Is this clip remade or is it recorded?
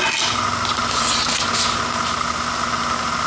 recorded